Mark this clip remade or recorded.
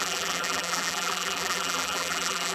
remade